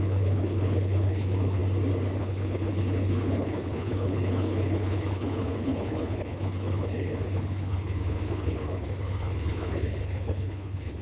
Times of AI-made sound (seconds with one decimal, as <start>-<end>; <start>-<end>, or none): 0.0-1.6; 2.2-11.0